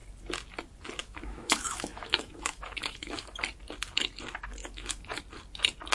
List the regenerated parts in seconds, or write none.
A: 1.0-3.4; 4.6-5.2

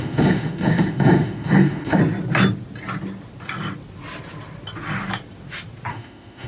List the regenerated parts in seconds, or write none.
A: 0.0-2.0; 5.9-6.5

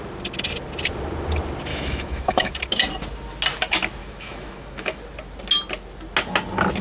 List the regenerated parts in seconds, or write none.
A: 1.7-2.5; 4.0-5.0

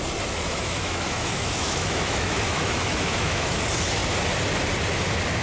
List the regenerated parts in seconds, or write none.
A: 0.5-3.5

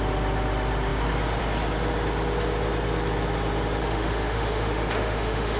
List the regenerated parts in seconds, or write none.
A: 3.8-5.6

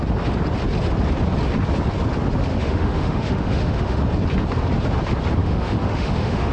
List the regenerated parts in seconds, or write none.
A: 2.5-4.0; 5.4-6.5

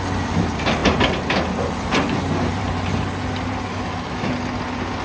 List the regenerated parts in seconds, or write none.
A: 3.7-4.3